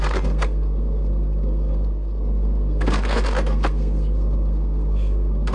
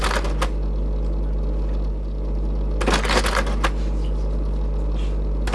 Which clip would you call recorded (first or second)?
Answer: second